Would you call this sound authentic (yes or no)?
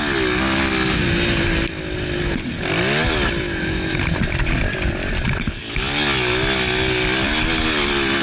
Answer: yes